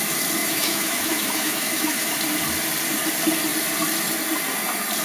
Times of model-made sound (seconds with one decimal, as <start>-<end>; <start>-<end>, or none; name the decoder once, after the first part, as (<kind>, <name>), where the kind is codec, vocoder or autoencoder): 0.4-2.1 (autoencoder, DAC-VAE)